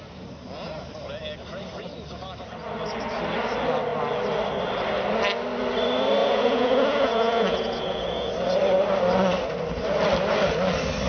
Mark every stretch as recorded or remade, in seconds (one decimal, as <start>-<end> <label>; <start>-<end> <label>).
0.0-6.2 recorded; 6.2-8.3 remade; 8.3-11.1 recorded